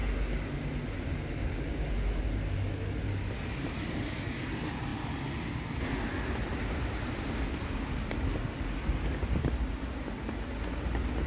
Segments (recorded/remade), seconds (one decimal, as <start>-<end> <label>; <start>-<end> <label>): 0.0-11.3 recorded